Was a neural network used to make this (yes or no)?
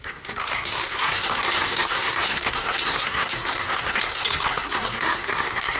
yes